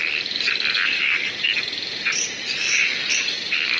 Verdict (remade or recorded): recorded